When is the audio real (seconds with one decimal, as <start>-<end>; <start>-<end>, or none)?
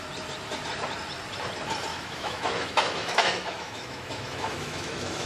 0.0-1.9